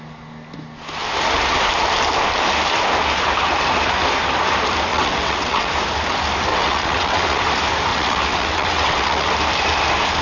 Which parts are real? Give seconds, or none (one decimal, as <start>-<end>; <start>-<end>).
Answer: 0.0-4.9; 5.7-6.5; 7.4-7.9; 9.3-10.2